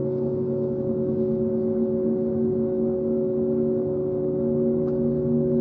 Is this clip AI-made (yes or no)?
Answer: yes